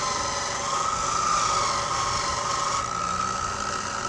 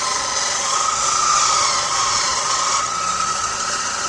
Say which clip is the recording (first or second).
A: first